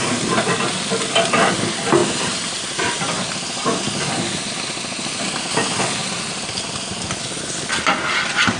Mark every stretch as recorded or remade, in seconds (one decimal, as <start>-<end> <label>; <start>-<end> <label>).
0.0-8.6 recorded